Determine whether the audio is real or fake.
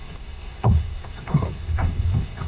fake